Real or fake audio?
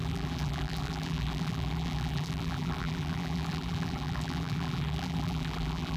fake